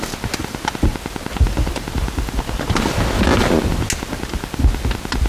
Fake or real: real